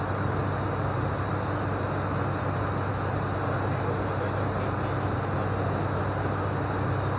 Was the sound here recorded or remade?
recorded